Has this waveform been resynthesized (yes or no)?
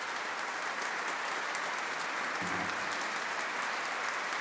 no